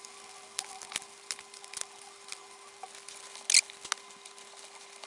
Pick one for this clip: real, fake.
real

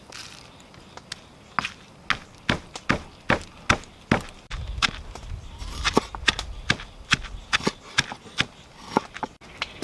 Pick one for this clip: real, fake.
real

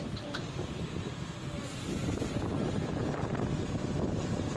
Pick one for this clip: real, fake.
real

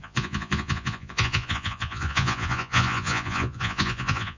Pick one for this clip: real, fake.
fake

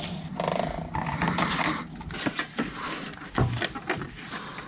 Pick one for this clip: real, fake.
real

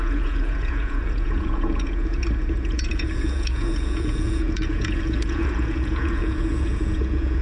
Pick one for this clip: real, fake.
fake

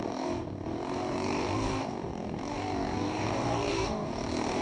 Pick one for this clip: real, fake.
fake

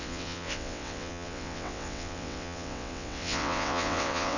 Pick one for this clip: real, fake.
fake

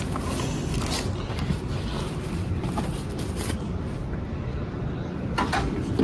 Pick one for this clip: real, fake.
real